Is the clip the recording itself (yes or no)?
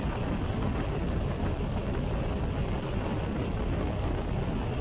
yes